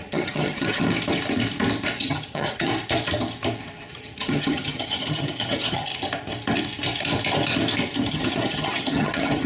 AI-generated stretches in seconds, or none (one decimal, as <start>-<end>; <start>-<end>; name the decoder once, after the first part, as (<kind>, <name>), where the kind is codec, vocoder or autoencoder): 0.0-0.8 (vocoder, HiFi-GAN); 2.0-2.7; 3.9-5.9; 8.1-9.5